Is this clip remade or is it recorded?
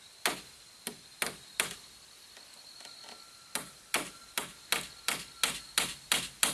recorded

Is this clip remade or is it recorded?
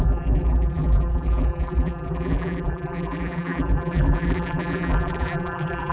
remade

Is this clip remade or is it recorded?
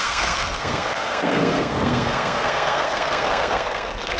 remade